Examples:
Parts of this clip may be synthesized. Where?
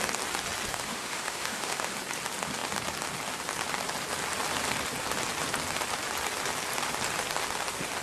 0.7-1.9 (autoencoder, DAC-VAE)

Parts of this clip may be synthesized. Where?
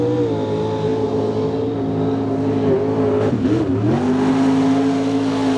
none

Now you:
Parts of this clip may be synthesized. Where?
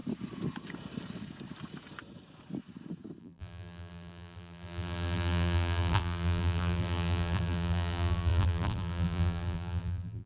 3.2-10.3 (vocoder, BigVGAN v2)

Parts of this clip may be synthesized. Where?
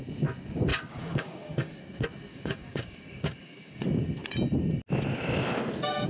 0.7-1.8 (codec, DAC); 2.3-3.8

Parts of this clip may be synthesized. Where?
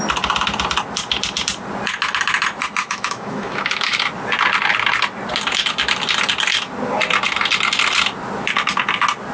2.8-4.0 (autoencoder, DAC-VAE)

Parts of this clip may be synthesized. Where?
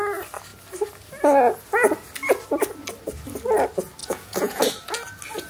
4.0-4.6 (vocoder, Vocos)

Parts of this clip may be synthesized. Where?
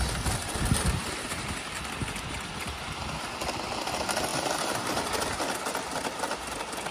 0.4-1.5 (vocoder, BigVGAN v2)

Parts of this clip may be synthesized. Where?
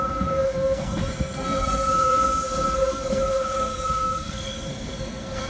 0.0-5.5 (codec, SNAC)